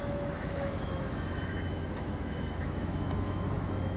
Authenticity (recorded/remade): remade